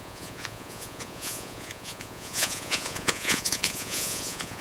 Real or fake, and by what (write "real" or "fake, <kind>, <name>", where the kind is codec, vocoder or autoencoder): fake, vocoder, Vocos